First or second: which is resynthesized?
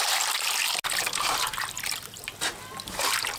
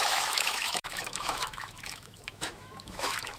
second